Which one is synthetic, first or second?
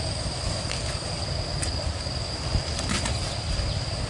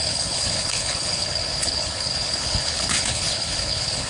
second